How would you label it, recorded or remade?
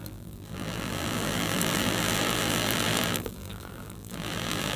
remade